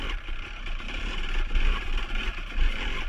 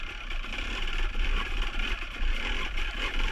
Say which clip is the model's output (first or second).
second